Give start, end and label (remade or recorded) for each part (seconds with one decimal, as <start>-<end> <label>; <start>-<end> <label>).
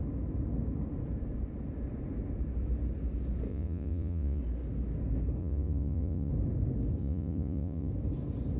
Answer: 0.0-3.5 recorded; 3.5-4.4 remade; 4.4-5.4 recorded; 5.4-6.3 remade; 6.3-7.0 recorded; 7.0-7.9 remade; 7.9-8.6 recorded